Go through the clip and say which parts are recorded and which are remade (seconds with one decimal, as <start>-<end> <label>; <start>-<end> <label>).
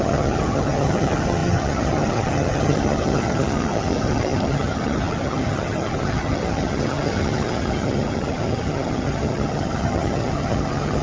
0.0-11.0 remade